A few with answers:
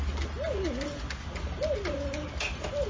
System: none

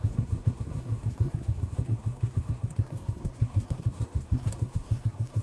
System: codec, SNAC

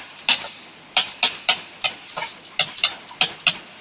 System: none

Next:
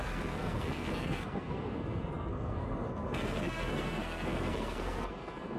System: codec, SNAC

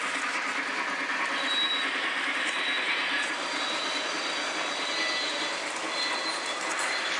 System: none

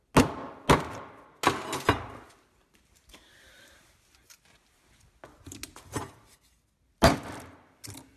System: none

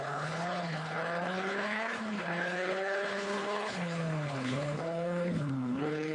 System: codec, HILCodec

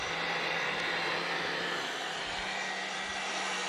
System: none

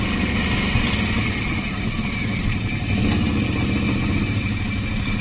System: none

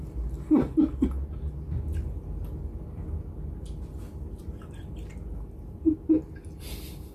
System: none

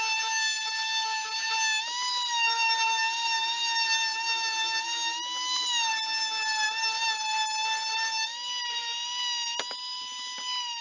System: none